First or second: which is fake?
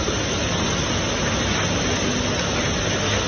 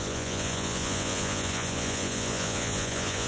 second